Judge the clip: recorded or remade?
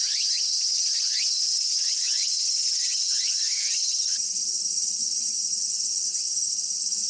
remade